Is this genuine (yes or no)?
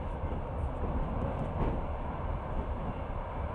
no